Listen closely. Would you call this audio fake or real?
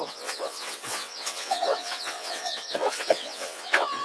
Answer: fake